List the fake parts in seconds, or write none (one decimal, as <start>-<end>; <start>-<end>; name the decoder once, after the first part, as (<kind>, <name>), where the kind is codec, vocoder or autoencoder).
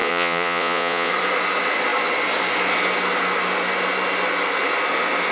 0.0-1.1 (vocoder, Vocos)